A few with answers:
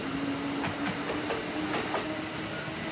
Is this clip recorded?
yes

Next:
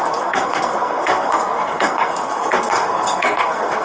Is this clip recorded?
no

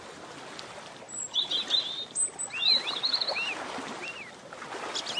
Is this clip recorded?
yes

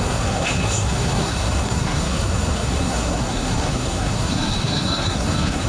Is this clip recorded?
no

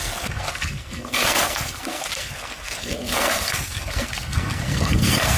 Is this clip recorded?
no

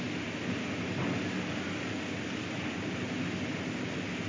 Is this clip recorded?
yes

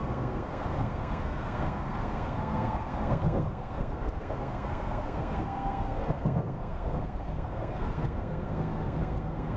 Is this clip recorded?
no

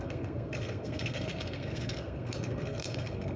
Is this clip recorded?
no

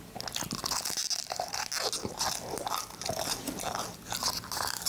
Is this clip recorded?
yes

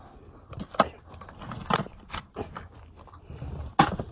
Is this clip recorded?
yes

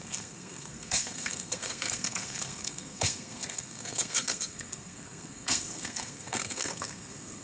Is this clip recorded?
no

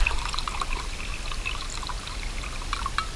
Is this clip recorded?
yes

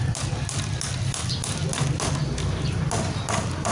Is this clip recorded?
yes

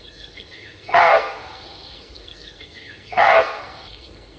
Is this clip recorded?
no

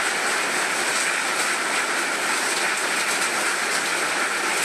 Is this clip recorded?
yes